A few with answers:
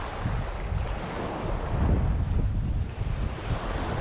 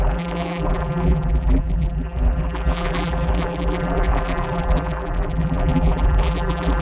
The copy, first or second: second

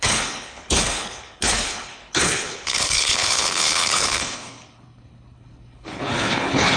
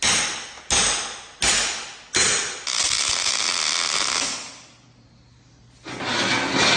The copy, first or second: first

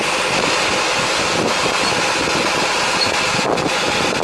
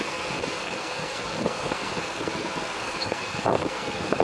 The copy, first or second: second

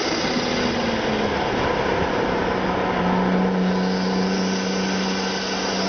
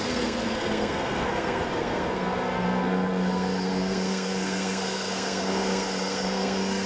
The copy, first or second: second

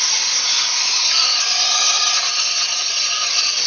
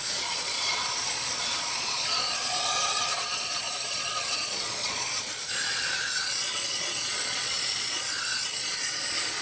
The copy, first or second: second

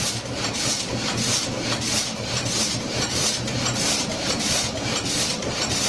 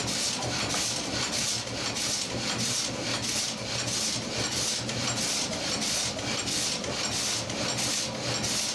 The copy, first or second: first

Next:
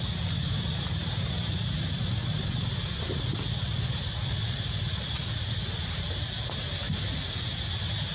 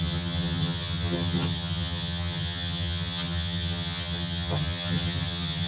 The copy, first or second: second